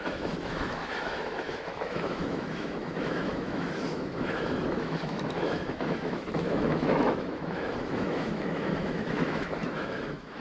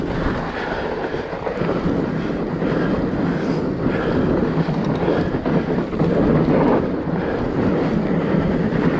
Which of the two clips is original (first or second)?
second